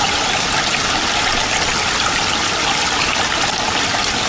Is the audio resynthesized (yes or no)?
no